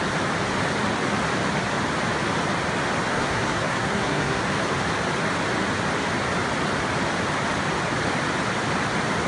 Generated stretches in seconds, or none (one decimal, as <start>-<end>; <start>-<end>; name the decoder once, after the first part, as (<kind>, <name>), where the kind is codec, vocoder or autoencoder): 3.1-4.4 (codec, SNAC)